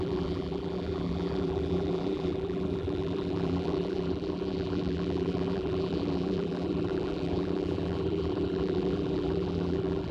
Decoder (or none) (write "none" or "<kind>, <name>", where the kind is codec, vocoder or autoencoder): vocoder, BigVGAN v2